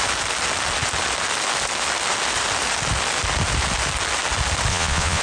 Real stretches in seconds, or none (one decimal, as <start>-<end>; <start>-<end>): 0.0-4.7